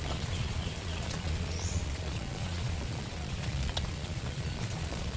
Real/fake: fake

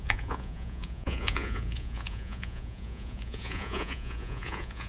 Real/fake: fake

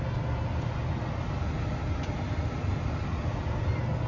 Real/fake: real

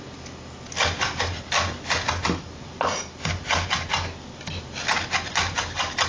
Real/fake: real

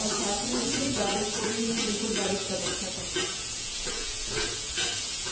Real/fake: fake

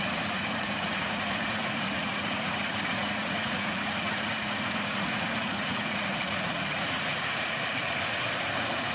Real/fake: fake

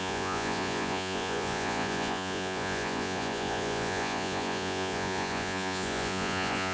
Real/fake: fake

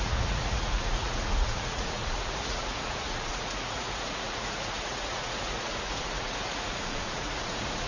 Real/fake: fake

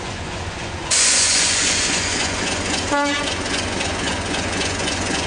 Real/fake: fake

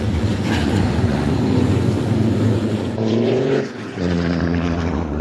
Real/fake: fake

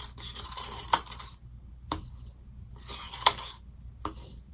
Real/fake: real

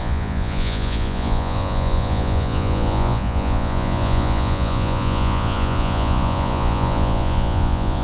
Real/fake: fake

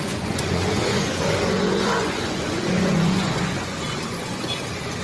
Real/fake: fake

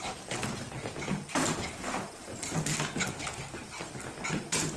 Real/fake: real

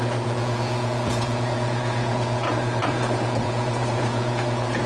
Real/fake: fake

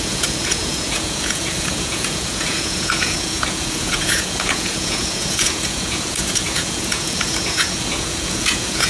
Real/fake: fake